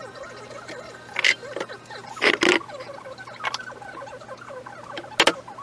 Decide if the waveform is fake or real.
real